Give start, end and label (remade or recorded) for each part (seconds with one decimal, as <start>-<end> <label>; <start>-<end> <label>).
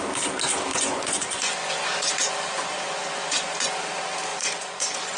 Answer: 0.0-0.7 recorded; 0.7-3.8 remade; 3.8-4.3 recorded; 4.3-5.2 remade